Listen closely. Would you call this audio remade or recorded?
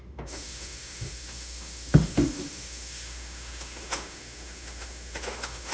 remade